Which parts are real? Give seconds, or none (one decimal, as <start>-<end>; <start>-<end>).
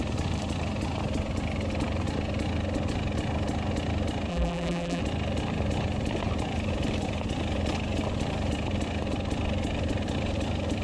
0.0-4.3; 5.0-10.8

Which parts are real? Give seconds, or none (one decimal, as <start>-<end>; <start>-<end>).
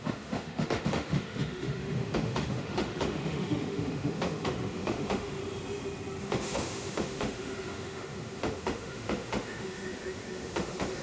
5.4-6.2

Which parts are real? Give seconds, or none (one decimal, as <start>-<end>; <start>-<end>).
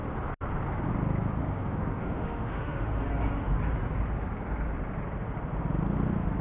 0.0-1.4; 3.0-6.4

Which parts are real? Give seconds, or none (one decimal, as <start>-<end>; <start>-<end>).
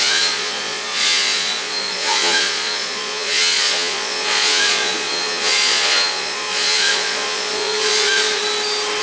8.4-9.0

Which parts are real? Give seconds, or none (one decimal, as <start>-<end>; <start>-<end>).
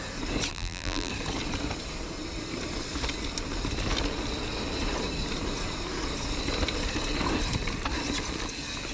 0.0-0.5; 1.1-8.9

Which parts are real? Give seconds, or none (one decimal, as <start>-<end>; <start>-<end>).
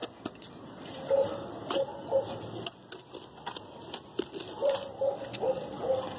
0.0-6.2